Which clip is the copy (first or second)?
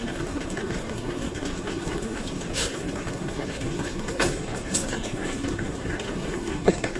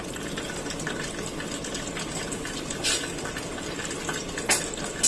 first